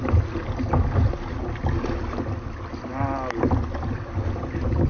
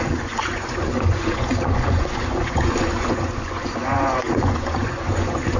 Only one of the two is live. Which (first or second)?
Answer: first